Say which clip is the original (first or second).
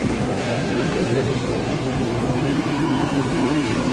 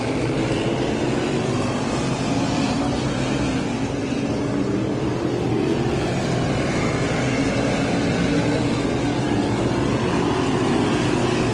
second